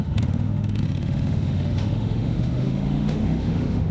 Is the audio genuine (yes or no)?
no